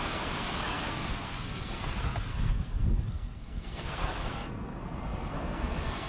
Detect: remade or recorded remade